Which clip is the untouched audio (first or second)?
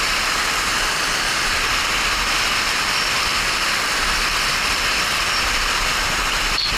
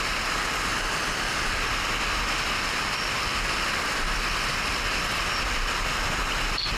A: second